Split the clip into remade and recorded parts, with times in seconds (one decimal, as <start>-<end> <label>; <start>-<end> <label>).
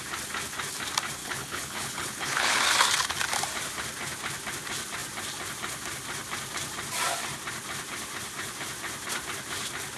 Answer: 0.0-1.2 recorded; 1.2-2.6 remade; 2.6-10.0 recorded